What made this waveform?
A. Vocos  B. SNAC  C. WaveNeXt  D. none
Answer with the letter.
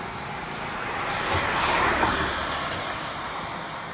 D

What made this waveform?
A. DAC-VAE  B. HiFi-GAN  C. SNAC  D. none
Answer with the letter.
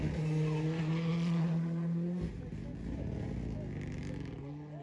D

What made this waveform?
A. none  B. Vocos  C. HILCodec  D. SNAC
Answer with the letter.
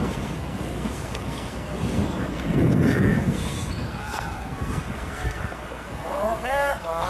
D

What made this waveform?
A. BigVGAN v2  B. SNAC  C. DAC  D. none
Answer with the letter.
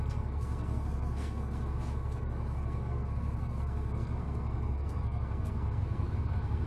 B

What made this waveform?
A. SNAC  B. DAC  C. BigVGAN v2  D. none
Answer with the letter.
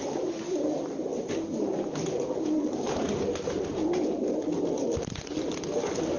D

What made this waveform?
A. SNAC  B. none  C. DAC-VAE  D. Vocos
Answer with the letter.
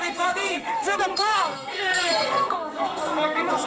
A